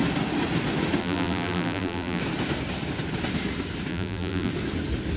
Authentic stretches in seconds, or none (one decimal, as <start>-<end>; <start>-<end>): 0.0-1.0; 2.2-3.9; 4.5-5.2